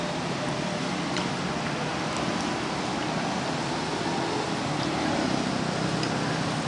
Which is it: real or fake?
real